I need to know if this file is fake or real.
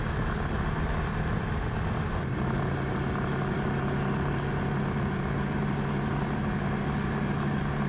real